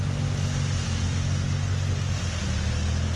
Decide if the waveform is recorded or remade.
recorded